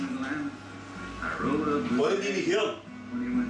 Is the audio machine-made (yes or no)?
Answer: no